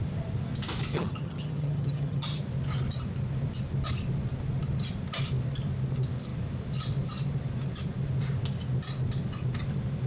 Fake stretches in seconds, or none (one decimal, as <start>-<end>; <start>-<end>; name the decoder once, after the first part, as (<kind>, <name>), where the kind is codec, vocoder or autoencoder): 0.9-2.4 (vocoder, HiFi-GAN)